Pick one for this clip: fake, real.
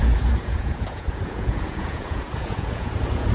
fake